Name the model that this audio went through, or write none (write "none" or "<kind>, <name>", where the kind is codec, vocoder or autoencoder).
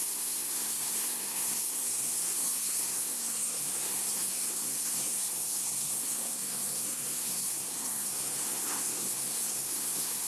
codec, SNAC